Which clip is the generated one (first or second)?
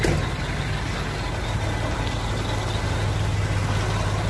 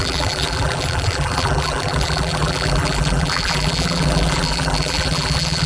second